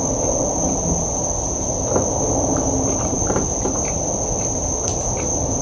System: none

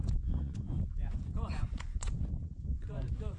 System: vocoder, Vocos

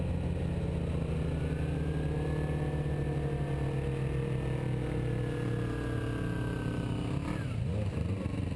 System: none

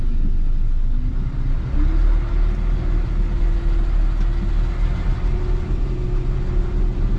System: none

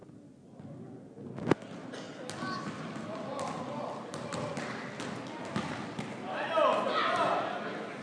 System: none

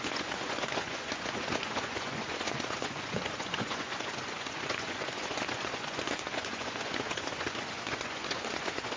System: vocoder, Vocos